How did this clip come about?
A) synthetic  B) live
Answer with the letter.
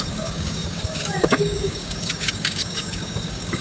A